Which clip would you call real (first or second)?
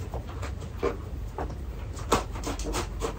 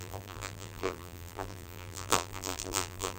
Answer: first